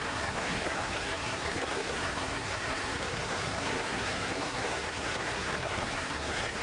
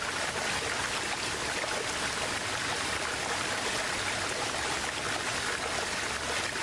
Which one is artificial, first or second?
first